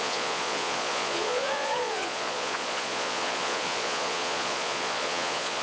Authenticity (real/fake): fake